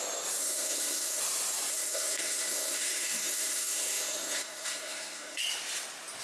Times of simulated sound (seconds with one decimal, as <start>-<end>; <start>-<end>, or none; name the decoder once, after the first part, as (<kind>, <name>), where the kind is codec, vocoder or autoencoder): 0.4-1.2 (codec, SNAC); 1.7-5.4